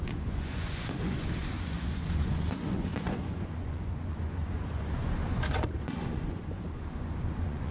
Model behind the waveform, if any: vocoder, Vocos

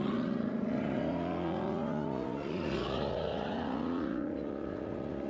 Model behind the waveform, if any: vocoder, Vocos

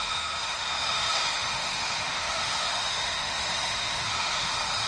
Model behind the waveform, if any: autoencoder, DAC-VAE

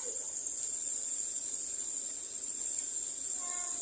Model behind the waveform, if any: none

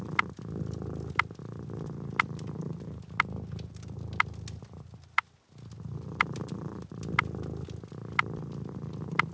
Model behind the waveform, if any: none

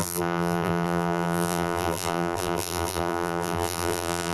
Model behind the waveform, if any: vocoder, BigVGAN v2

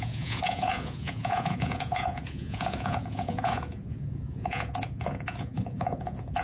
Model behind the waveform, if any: vocoder, Vocos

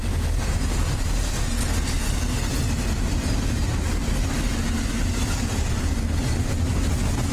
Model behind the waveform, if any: none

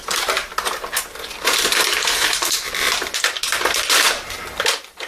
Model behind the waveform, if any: vocoder, BigVGAN v2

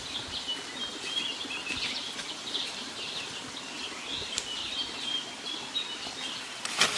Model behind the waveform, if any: none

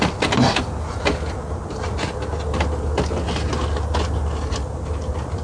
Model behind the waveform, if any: none